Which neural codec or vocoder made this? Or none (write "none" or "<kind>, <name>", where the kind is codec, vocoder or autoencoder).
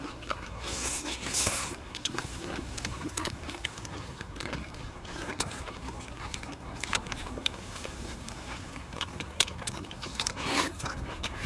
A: codec, SNAC